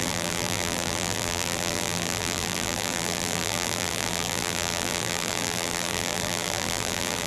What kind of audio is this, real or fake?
fake